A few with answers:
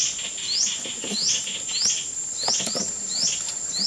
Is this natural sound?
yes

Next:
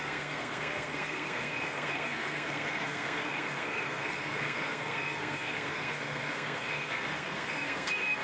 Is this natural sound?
no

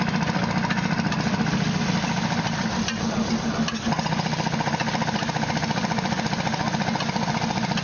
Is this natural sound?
yes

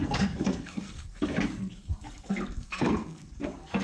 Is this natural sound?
no